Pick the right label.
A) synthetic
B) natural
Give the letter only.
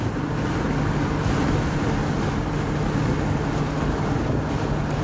B